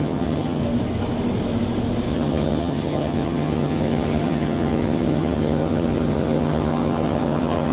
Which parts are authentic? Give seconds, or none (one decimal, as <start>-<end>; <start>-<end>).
0.6-2.1